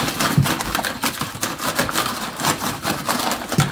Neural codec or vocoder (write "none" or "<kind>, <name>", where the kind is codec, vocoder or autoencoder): none